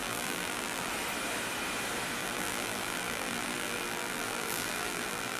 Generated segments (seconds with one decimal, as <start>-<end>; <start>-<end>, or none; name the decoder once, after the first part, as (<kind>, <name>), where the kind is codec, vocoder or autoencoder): 0.0-0.9 (vocoder, BigVGAN v2); 2.2-5.4